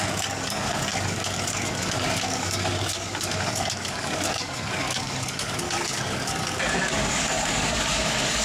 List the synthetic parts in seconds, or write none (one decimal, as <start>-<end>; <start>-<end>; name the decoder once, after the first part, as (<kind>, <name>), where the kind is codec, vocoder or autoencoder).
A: 0.0-8.4 (codec, DAC)